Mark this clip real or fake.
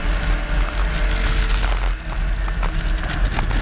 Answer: real